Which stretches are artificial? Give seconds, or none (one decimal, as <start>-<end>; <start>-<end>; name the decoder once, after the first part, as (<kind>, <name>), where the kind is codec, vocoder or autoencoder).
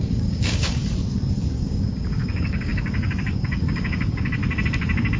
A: 0.0-0.8 (codec, DAC); 1.5-4.4